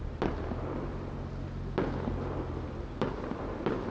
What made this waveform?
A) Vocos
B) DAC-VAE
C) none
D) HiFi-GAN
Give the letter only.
C